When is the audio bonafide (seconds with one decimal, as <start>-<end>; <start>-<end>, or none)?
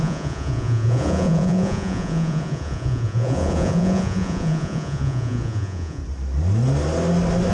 6.0-7.5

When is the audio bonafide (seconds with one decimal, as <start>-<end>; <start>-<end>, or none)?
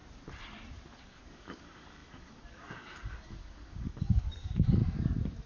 0.0-1.0; 4.8-5.5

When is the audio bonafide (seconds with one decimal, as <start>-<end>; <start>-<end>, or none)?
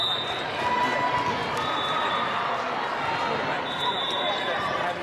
0.0-5.0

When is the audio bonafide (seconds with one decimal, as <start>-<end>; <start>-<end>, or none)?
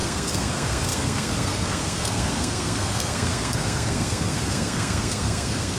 none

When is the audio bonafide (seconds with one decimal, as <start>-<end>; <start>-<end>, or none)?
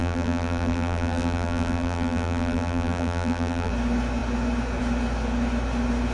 3.7-6.1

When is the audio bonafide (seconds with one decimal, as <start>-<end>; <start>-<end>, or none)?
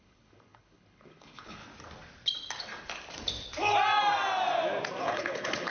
1.6-5.0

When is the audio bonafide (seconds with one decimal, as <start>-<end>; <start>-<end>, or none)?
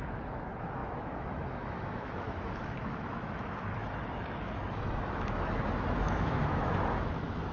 none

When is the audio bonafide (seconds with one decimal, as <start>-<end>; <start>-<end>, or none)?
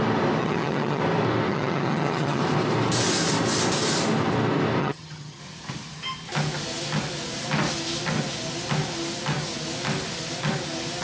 0.0-0.4; 1.0-1.5; 2.4-4.8; 5.4-11.0